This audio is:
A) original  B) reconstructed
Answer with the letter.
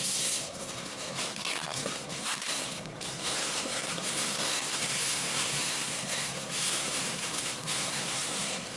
B